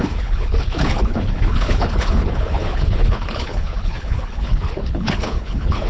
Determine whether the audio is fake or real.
fake